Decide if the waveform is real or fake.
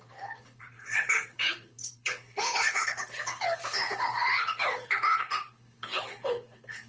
fake